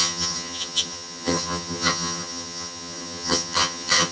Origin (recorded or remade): remade